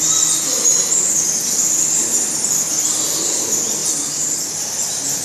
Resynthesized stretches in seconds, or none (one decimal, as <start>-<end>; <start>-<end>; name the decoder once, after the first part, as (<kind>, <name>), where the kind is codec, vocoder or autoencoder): 3.8-4.5 (vocoder, BigVGAN v2)